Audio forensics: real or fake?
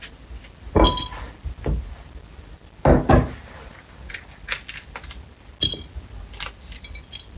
real